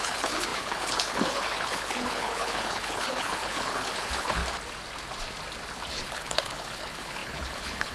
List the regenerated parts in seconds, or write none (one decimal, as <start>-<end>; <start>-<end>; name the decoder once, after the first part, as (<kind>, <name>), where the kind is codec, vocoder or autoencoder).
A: 0.0-4.4 (codec, HILCodec); 5.9-7.9